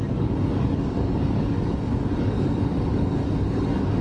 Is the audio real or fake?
fake